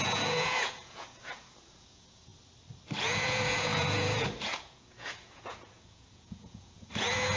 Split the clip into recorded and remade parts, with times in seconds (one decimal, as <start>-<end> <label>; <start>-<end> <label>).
0.0-2.3 remade; 2.3-3.0 recorded; 3.0-7.4 remade